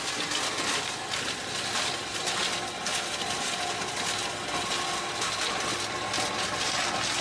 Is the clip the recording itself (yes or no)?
yes